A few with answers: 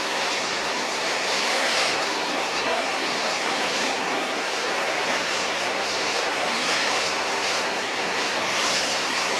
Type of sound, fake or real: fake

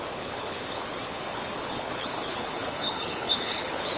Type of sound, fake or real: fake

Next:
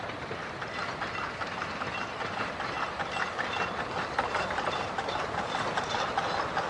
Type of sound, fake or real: fake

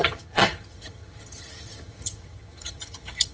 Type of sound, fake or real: fake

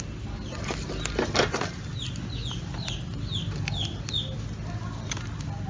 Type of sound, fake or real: real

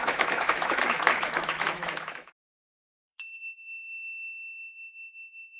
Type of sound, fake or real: fake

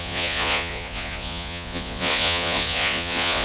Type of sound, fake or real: fake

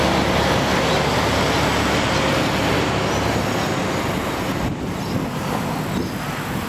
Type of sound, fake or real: real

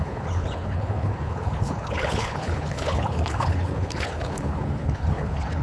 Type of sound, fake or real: fake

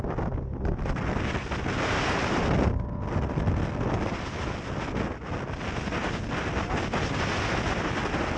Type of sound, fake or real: real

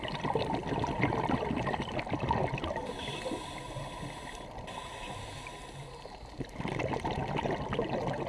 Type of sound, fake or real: real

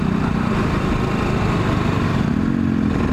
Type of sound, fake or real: real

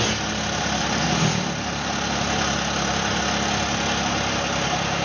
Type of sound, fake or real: real